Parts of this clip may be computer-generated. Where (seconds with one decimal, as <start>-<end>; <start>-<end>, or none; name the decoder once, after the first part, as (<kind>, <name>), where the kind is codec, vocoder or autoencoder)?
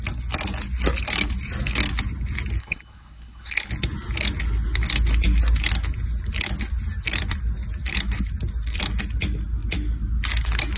2.6-3.7 (codec, HILCodec)